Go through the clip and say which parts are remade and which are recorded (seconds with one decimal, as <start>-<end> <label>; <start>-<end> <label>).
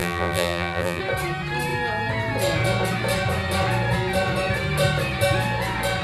0.0-1.0 remade; 1.0-6.0 recorded